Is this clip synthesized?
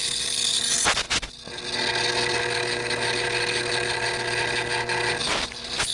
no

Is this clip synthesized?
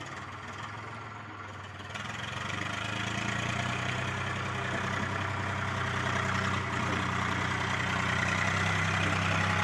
no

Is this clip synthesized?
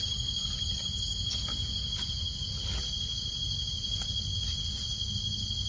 no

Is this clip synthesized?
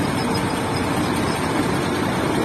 yes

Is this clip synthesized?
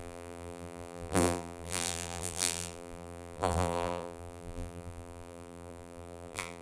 yes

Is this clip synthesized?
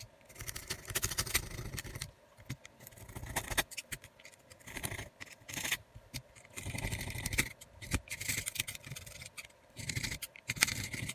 yes